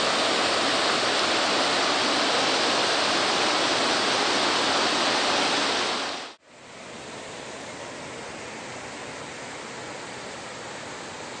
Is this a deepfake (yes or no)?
no